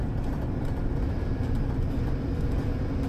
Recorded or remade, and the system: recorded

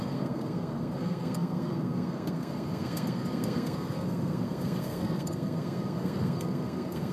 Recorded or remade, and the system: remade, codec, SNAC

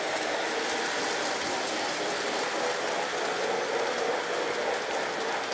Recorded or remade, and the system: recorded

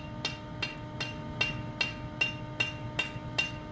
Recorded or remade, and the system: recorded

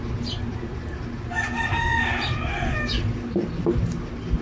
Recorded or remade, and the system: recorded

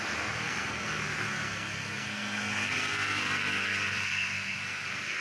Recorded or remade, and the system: remade, codec, SNAC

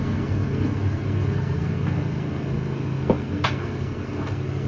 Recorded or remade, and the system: remade, codec, SNAC